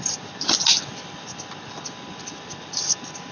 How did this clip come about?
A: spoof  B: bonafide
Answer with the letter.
B